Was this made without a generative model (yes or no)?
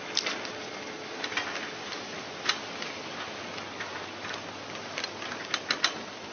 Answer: yes